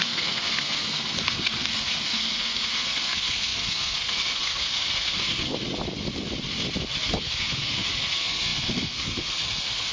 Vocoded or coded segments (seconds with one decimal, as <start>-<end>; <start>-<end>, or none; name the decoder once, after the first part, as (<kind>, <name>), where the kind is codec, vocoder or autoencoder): 0.0-5.5 (codec, SNAC); 7.2-9.9